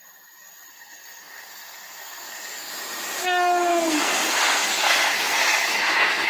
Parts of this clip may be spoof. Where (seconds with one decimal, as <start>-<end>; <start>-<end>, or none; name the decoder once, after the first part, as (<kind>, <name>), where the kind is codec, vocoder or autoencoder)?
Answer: 0.7-2.7 (codec, SNAC); 3.7-6.3

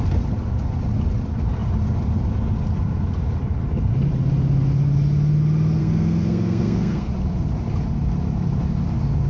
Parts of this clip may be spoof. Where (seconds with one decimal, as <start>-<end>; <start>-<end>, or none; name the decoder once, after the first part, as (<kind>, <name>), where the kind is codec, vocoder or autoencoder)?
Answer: 5.8-7.1 (codec, SNAC)